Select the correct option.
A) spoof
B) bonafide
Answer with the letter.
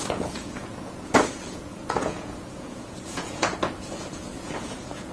A